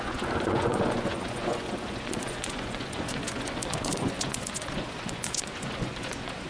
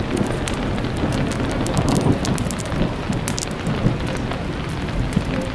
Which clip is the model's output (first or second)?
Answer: first